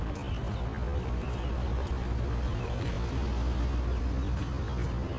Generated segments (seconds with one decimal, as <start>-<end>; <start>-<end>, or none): none